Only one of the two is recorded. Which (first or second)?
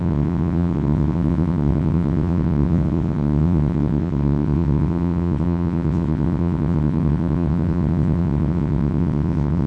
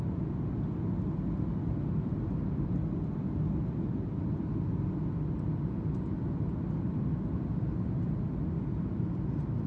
second